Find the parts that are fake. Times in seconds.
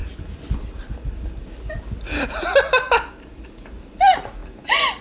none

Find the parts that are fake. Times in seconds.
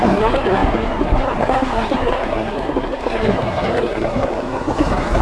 0.0-5.2 (codec, SNAC)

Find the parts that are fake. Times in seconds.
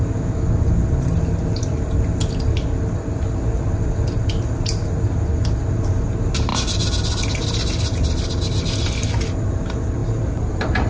none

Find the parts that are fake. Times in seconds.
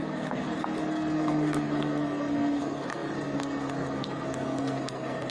0.0-5.3 (codec, SNAC)